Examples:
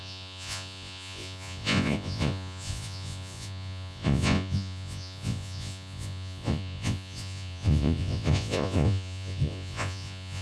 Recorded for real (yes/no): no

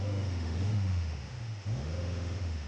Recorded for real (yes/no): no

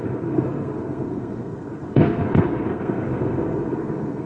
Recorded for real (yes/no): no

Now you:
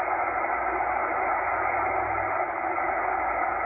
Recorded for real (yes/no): yes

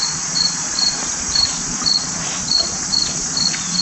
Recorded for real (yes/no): no